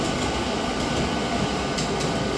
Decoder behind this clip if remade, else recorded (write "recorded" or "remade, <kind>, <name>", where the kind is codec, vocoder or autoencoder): recorded